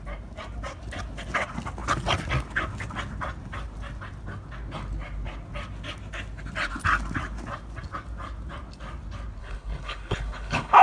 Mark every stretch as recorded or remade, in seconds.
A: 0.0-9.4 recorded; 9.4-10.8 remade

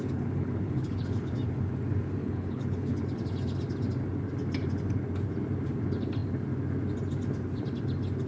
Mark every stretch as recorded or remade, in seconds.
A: 0.0-1.3 remade; 1.3-2.2 recorded; 2.2-3.0 remade; 3.0-8.3 recorded

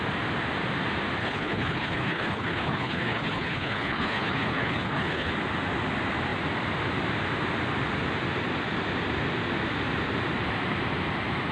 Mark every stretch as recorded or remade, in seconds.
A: 0.0-1.2 recorded; 1.2-5.3 remade; 5.3-11.5 recorded

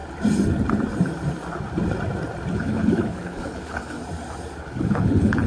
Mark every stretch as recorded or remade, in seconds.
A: 0.0-2.5 recorded; 2.5-4.0 remade; 4.0-4.6 recorded; 4.6-5.5 remade